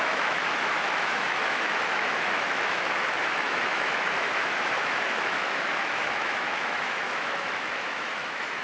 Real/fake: fake